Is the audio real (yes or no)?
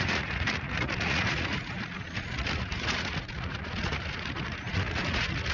no